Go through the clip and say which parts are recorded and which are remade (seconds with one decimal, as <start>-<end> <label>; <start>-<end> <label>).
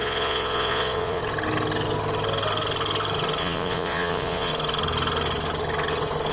0.0-1.2 remade; 1.2-3.4 recorded; 3.4-4.5 remade; 4.5-6.3 recorded